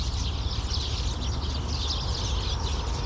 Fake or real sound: real